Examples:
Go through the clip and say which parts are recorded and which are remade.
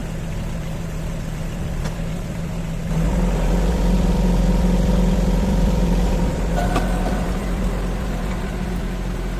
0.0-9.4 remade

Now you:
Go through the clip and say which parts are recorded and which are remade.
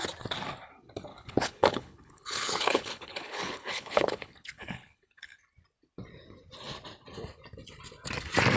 0.0-1.1 recorded; 1.1-5.4 remade; 5.4-8.6 recorded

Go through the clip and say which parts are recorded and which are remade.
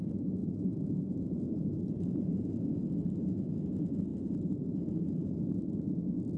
0.0-0.4 recorded; 0.4-2.7 remade; 2.7-4.1 recorded; 4.1-5.3 remade; 5.3-6.4 recorded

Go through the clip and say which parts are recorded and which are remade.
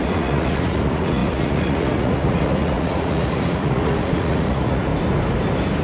0.0-4.9 remade; 4.9-5.8 recorded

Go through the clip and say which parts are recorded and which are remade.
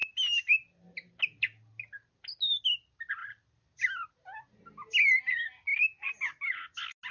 0.0-7.1 recorded